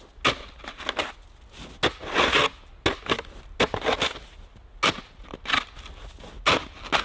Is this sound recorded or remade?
recorded